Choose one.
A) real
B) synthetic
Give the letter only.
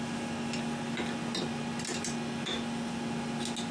A